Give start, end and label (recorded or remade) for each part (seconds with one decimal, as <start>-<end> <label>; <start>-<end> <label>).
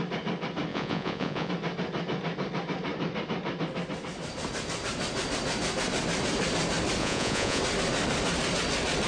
0.0-0.7 recorded; 0.7-1.5 remade; 1.5-7.0 recorded; 7.0-7.6 remade; 7.6-9.1 recorded